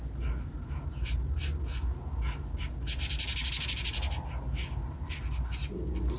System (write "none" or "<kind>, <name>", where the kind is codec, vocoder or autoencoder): none